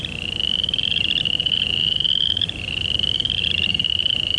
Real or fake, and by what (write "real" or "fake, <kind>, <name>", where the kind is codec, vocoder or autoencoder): real